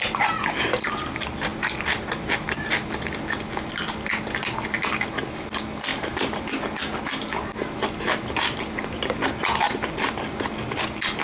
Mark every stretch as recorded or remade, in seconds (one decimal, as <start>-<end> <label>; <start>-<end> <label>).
0.0-5.9 recorded; 5.9-6.6 remade; 6.6-11.2 recorded